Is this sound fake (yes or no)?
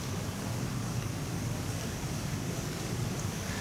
yes